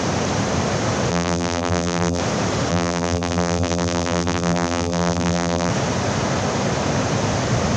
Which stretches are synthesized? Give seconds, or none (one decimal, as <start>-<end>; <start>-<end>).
1.1-2.2; 2.7-5.7